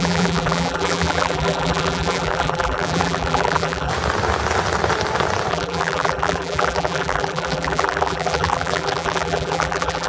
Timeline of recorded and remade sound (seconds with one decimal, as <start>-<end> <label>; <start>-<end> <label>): 0.0-3.9 remade; 3.9-5.5 recorded; 5.5-10.1 remade

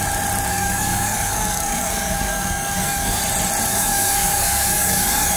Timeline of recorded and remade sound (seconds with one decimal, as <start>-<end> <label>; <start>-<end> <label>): 0.0-0.5 recorded; 0.5-3.2 remade; 3.2-3.7 recorded; 3.7-5.4 remade

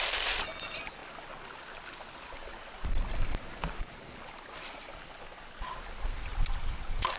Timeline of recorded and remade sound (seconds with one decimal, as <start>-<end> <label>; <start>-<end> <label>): 0.0-7.2 recorded